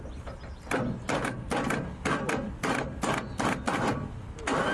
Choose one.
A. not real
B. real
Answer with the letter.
B